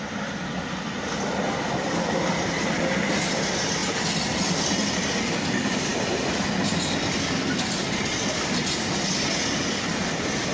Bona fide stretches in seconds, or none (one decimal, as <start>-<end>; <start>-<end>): 0.0-10.5